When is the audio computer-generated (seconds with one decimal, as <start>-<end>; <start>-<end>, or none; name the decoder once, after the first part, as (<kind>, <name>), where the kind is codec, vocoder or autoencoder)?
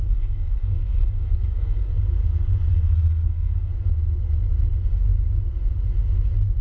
0.0-1.9 (codec, SNAC); 2.7-3.7